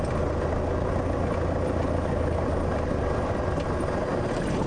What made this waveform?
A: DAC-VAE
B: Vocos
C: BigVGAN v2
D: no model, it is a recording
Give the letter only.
D